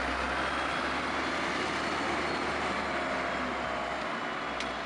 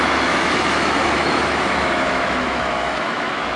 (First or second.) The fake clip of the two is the second